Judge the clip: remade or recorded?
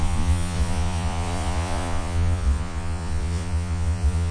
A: remade